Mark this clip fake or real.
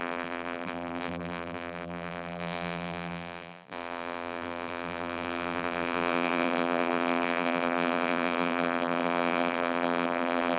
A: fake